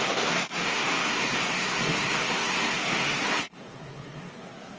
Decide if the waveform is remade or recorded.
remade